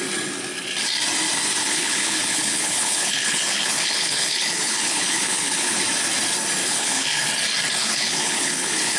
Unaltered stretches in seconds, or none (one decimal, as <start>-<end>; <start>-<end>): 0.0-1.6; 5.8-6.6; 7.2-7.8